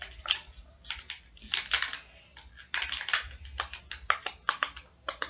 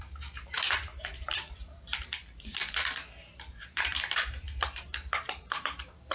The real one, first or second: first